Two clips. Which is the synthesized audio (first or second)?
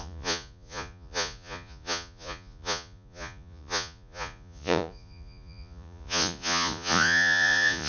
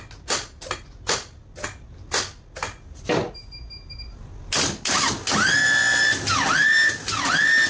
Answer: first